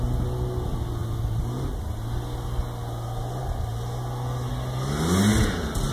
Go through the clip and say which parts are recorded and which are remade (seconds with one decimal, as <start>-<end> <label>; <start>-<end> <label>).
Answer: 0.0-5.9 recorded